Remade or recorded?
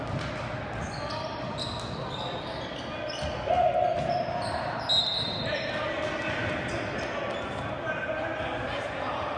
recorded